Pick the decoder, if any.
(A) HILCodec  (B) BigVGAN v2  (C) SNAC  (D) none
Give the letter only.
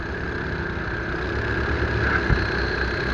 D